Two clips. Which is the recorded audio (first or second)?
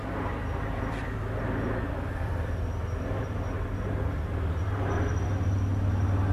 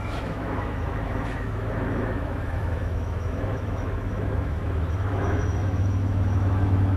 first